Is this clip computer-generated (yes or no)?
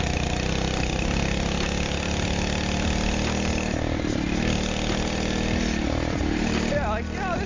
no